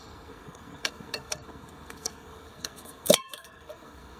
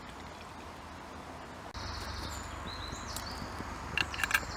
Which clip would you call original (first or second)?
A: second